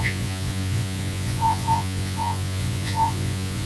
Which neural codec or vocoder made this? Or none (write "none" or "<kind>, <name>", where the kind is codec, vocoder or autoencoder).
vocoder, Vocos